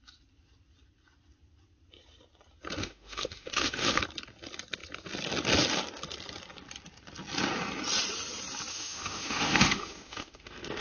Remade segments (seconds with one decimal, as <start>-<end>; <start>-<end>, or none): 2.8-4.0; 8.7-10.8